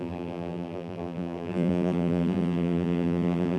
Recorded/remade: remade